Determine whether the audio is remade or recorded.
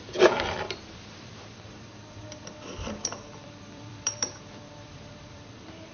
remade